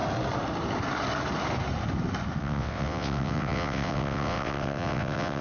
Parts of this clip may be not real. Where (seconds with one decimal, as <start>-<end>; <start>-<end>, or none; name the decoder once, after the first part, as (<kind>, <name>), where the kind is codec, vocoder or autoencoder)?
2.4-5.4 (vocoder, WaveNeXt)